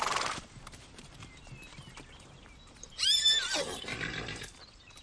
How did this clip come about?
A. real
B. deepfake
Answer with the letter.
B